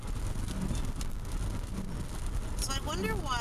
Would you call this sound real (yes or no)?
yes